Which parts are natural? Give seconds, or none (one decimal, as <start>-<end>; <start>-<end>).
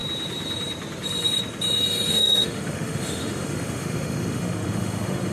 0.0-2.1